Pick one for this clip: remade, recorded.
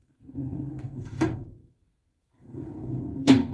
remade